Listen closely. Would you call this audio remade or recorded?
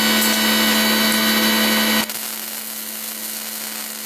recorded